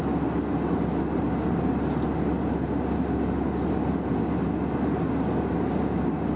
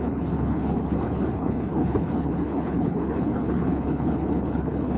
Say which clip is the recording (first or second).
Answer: first